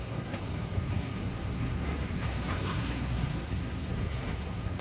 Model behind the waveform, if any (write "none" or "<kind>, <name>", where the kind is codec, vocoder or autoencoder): codec, SNAC